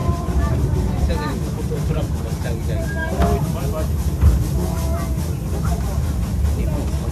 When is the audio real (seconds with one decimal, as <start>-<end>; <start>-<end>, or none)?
2.2-7.1